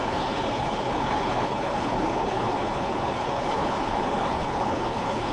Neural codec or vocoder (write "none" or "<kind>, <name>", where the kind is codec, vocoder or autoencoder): codec, HILCodec